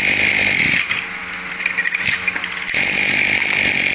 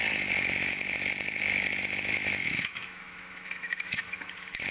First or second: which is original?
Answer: first